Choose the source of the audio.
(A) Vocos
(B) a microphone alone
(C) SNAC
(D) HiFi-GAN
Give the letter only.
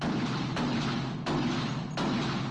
B